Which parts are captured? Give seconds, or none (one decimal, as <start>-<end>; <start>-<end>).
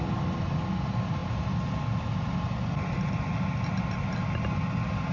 0.0-5.1